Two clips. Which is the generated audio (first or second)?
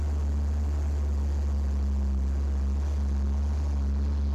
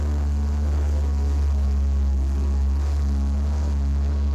second